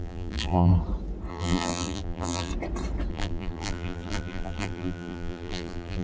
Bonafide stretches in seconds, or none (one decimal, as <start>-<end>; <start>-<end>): 0.7-1.3; 2.5-3.1